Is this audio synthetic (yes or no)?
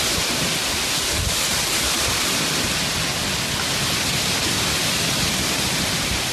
no